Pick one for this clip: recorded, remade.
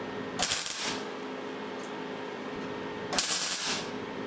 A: recorded